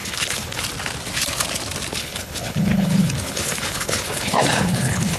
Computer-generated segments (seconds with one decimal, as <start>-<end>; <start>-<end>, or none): 0.0-0.6; 2.0-5.2